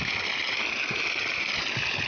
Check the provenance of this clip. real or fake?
real